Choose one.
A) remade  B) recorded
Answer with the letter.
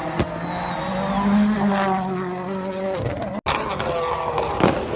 B